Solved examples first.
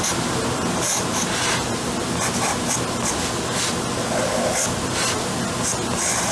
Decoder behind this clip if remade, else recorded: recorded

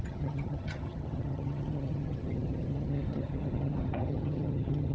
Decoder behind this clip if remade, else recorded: remade, vocoder, HiFi-GAN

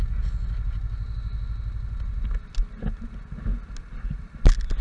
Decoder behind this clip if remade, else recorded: recorded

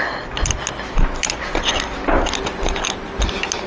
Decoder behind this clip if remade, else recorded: recorded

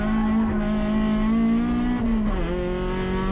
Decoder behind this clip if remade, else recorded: recorded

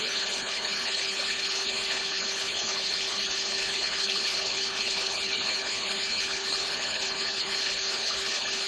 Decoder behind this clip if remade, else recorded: remade, codec, HILCodec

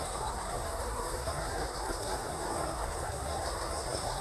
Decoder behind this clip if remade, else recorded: remade, codec, SNAC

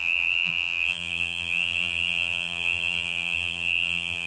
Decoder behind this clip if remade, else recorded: remade, vocoder, BigVGAN v2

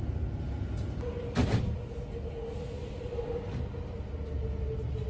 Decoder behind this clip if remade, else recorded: recorded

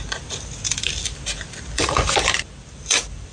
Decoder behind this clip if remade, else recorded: remade, vocoder, BigVGAN v2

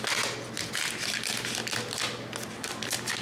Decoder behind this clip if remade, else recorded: recorded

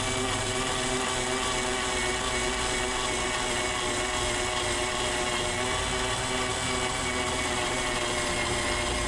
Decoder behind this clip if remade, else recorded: recorded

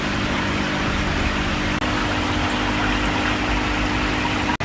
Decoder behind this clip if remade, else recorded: recorded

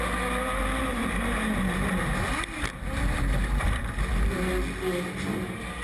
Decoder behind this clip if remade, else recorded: recorded